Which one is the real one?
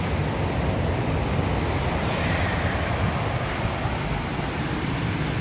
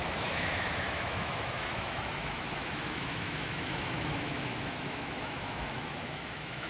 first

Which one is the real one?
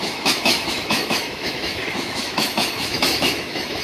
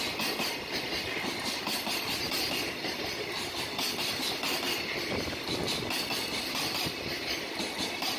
second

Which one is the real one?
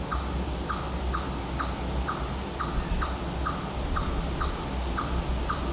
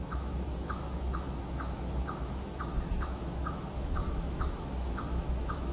first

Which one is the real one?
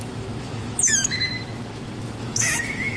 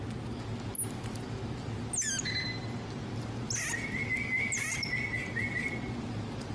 second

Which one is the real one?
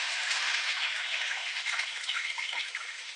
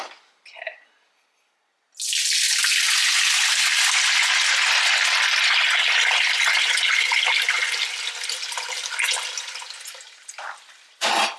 second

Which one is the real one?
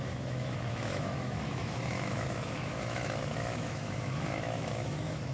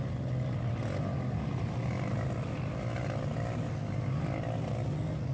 second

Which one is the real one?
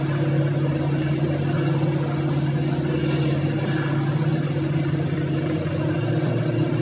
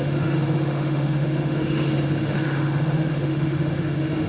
first